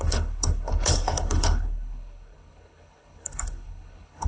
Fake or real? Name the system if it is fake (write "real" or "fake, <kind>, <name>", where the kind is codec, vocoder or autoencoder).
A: fake, codec, HILCodec